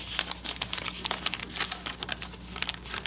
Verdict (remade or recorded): recorded